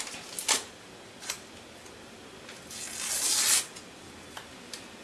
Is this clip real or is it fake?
real